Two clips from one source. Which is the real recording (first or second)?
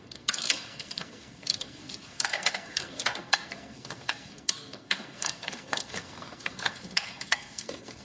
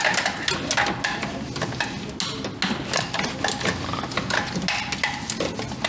second